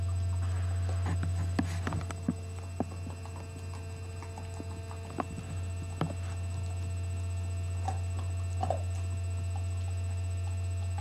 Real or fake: real